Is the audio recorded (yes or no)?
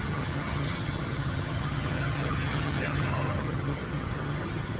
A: no